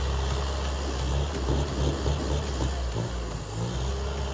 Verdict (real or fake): real